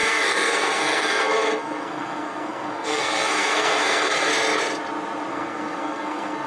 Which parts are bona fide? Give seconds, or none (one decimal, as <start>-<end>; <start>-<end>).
4.3-5.3